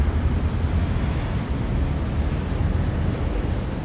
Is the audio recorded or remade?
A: recorded